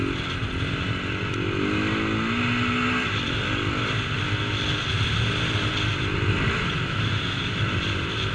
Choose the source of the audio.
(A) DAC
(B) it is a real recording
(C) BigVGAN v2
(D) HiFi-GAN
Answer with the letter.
B